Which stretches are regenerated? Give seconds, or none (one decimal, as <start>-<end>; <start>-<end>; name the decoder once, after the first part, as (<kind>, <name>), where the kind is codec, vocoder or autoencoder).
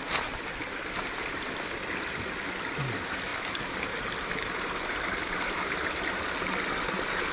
none